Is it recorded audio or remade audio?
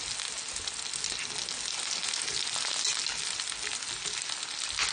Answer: recorded